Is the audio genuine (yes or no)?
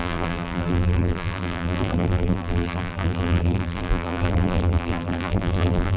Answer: no